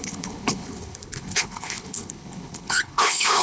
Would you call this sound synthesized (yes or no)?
yes